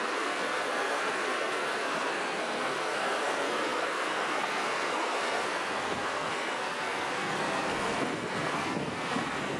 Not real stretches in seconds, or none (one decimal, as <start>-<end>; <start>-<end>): 0.0-9.6